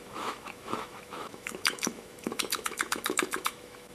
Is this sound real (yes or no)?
no